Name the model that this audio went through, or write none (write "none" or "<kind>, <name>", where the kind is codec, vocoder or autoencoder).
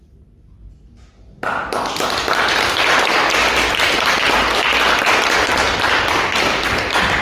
none